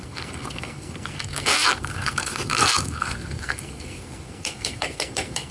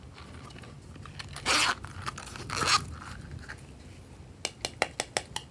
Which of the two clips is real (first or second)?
second